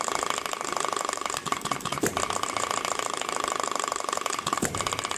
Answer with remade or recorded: remade